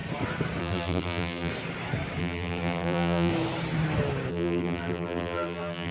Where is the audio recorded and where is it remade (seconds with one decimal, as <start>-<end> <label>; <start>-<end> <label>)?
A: 0.0-0.6 recorded; 0.6-1.5 remade; 1.5-2.2 recorded; 2.2-3.3 remade; 3.3-4.3 recorded; 4.3-5.9 remade